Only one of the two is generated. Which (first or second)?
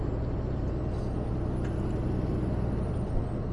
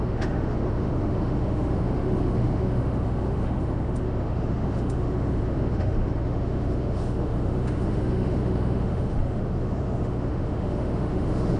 second